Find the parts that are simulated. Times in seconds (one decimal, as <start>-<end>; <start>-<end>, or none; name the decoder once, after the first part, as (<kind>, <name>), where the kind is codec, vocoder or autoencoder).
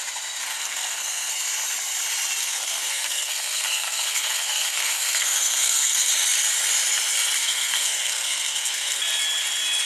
0.5-1.3 (codec, SNAC); 2.4-6.1; 7.4-9.0